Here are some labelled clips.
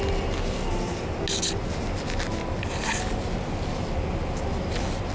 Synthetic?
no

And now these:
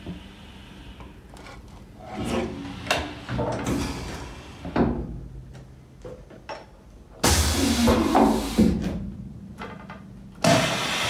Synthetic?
no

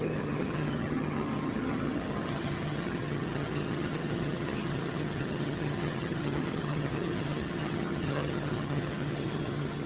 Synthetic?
yes